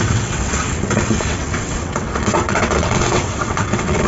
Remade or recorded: remade